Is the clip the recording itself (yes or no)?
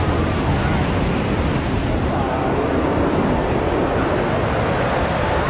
yes